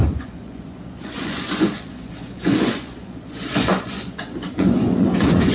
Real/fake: fake